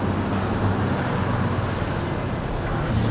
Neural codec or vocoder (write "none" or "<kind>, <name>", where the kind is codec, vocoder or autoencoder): none